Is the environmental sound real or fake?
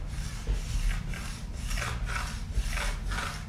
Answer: real